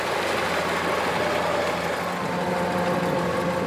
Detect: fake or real real